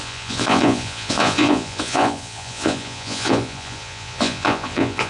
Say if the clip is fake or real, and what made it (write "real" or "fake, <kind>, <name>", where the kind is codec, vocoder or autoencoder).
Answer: fake, vocoder, Vocos